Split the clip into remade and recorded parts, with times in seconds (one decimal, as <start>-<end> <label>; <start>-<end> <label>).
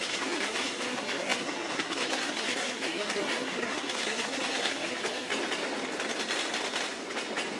0.0-5.3 remade; 5.3-7.6 recorded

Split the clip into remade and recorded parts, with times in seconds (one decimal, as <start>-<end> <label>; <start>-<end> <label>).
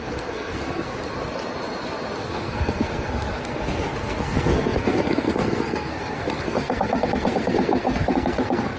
0.0-0.9 remade; 0.9-2.2 recorded; 2.2-8.8 remade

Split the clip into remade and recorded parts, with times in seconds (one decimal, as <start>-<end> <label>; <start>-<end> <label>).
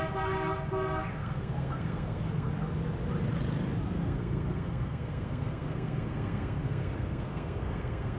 0.0-1.2 recorded; 1.2-2.5 remade; 2.5-4.0 recorded; 4.0-8.2 remade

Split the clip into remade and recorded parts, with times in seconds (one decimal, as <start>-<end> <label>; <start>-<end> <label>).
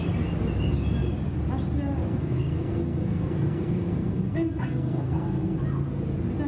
0.0-2.1 recorded; 2.1-5.6 remade; 5.6-6.5 recorded